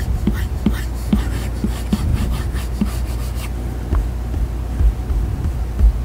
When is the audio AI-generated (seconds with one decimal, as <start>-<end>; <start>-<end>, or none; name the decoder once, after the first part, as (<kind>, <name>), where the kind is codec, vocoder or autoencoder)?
2.1-2.6 (vocoder, BigVGAN v2)